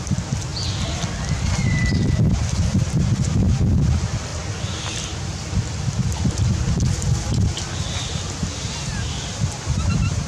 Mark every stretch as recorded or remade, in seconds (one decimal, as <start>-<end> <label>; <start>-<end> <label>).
0.0-10.3 recorded